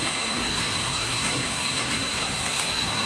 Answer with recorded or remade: remade